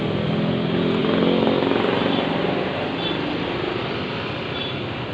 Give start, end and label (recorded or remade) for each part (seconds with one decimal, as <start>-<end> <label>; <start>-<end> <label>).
0.0-5.1 recorded